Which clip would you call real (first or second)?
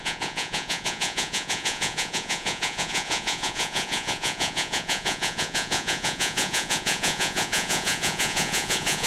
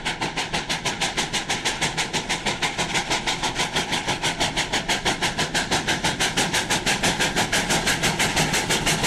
second